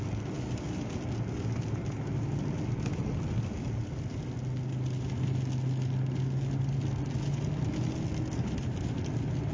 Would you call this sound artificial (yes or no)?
no